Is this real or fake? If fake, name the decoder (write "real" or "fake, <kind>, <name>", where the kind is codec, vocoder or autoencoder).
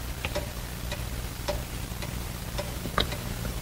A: fake, vocoder, BigVGAN v2